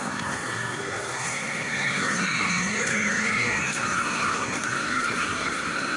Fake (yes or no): yes